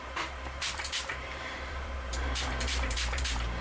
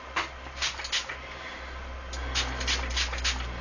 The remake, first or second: first